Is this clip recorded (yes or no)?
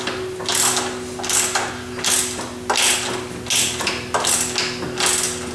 yes